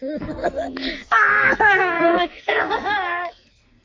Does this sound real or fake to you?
fake